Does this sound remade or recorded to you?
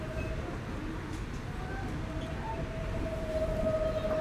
recorded